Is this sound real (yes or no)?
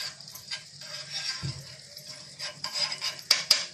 no